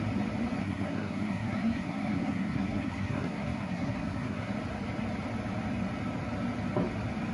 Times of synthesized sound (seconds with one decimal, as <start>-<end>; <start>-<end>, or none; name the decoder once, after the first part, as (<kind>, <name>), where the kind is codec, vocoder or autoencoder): 0.6-4.5 (codec, SNAC)